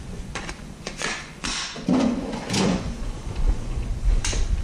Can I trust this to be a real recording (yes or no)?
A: no